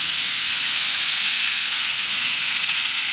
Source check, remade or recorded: remade